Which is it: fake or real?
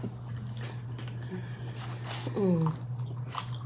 real